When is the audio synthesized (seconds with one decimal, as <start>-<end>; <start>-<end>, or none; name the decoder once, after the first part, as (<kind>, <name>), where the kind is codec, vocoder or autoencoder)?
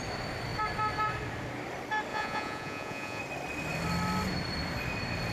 2.1-3.2 (vocoder, Vocos)